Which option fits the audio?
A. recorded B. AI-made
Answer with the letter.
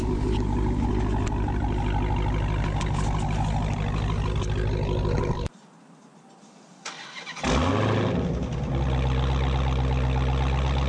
A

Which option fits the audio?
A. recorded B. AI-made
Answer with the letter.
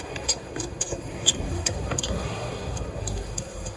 B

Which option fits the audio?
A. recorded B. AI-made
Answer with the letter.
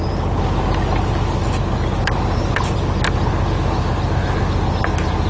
A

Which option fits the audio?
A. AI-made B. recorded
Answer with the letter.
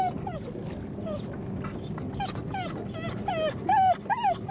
B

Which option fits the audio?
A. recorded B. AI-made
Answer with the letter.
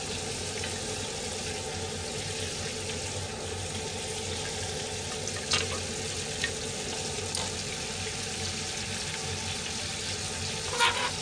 A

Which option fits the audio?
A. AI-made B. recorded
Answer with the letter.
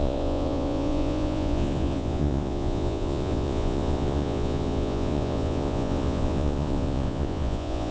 A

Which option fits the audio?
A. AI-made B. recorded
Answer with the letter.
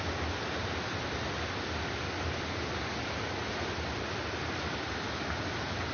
B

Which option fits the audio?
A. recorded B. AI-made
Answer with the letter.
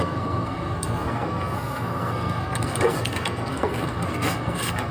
B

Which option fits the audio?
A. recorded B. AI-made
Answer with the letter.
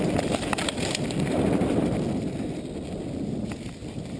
A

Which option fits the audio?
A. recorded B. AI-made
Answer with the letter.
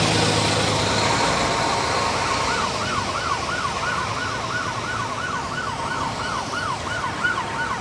A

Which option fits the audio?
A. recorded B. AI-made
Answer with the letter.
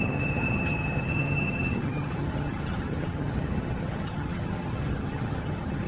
B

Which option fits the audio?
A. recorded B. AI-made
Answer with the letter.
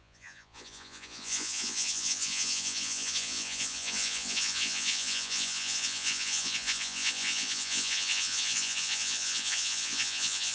B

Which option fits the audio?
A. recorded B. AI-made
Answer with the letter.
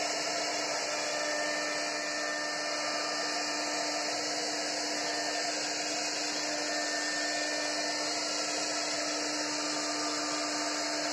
A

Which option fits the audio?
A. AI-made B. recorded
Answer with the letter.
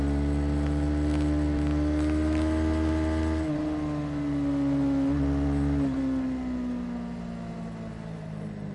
B